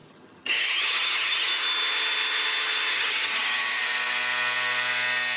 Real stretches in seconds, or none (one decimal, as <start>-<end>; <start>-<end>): 1.5-2.9; 3.8-5.4